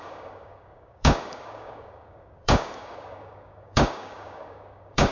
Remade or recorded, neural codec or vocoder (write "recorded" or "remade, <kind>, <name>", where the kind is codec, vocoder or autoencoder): remade, codec, DAC